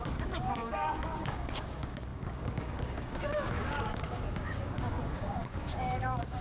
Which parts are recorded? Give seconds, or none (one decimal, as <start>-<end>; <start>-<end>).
none